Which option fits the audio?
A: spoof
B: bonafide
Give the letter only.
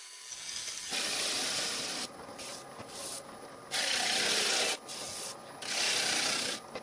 B